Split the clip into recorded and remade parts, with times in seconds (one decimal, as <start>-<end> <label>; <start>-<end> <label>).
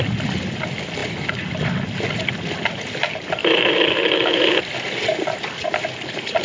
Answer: 0.0-3.4 recorded; 3.4-4.6 remade; 4.6-6.4 recorded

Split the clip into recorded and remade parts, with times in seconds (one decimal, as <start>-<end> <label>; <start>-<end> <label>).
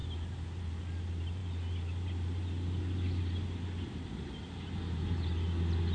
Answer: 0.0-5.9 recorded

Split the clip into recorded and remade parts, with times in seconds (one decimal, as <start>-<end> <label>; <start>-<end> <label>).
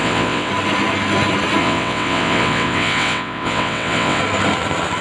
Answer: 0.0-0.5 remade; 0.5-1.6 recorded; 1.6-4.2 remade; 4.2-5.0 recorded